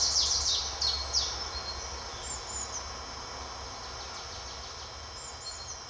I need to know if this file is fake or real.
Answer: real